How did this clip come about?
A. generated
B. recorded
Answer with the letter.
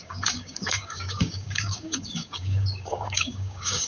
A